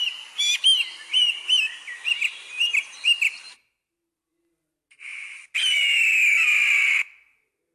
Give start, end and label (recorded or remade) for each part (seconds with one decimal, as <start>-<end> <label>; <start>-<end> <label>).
0.0-7.7 recorded